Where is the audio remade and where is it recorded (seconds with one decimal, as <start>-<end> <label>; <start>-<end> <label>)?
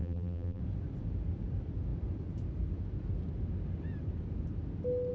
0.0-0.6 remade; 0.6-5.1 recorded